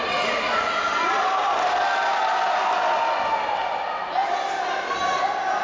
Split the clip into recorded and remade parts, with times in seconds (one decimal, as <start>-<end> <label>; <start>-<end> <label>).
0.0-5.6 recorded